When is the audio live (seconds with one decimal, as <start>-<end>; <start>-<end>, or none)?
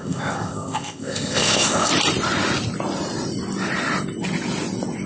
1.9-5.1